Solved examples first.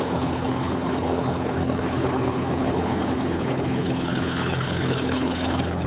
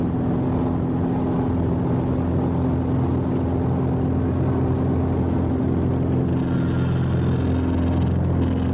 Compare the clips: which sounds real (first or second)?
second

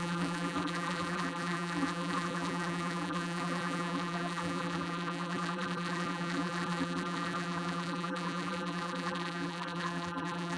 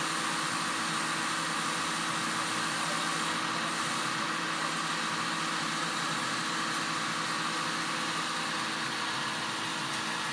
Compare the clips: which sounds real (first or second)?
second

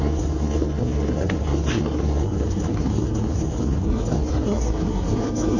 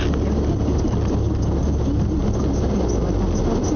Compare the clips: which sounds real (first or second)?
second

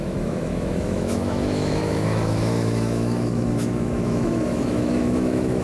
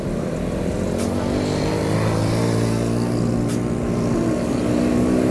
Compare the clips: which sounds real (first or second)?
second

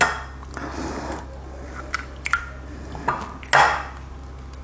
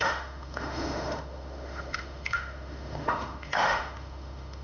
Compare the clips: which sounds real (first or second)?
first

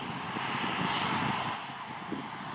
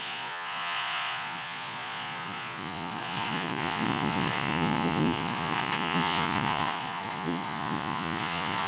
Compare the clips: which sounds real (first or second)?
first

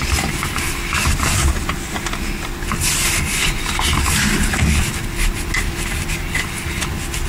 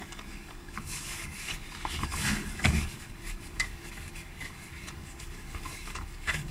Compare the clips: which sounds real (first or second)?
first